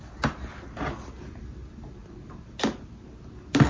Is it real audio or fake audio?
real